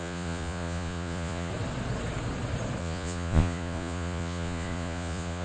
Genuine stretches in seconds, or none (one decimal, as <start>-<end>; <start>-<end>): 1.5-2.8